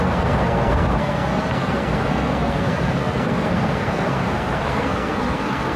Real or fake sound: fake